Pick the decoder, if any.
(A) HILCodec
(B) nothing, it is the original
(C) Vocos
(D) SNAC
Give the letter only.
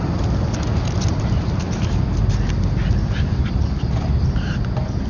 B